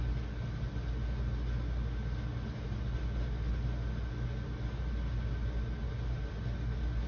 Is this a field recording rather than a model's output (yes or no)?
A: yes